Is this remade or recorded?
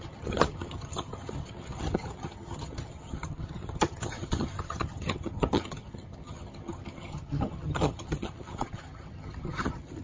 remade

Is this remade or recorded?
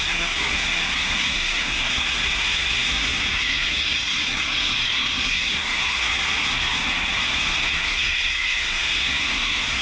remade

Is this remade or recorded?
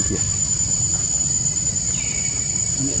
recorded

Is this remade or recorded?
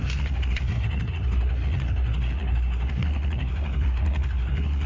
remade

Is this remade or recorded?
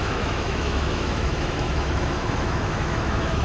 remade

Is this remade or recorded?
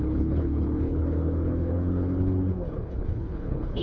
remade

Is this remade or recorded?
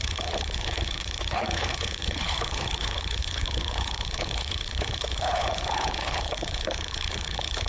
remade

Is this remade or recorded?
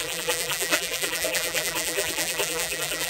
remade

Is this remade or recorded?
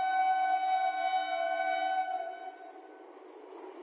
recorded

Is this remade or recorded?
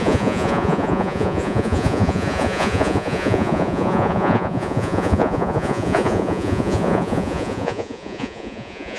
remade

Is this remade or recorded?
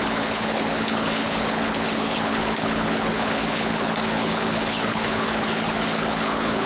remade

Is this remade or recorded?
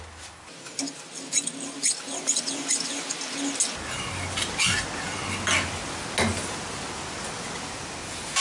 recorded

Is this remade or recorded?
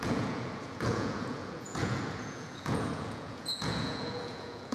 remade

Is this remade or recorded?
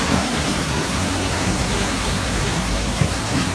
remade